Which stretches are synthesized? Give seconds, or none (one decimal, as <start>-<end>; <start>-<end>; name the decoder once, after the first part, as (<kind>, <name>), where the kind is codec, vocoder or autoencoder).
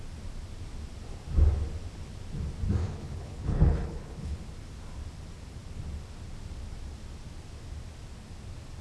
2.8-4.4 (codec, HILCodec)